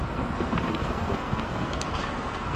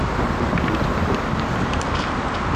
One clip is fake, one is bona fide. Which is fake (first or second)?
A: first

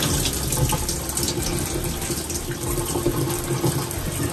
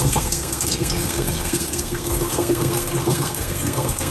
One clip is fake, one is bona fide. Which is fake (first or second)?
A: second